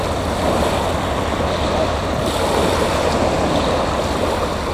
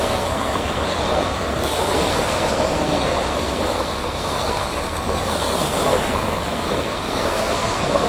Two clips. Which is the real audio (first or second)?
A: first